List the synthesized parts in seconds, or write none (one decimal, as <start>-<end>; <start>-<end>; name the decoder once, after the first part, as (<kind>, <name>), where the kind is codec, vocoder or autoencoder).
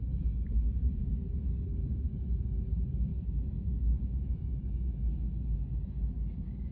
3.1-5.3 (autoencoder, DAC-VAE)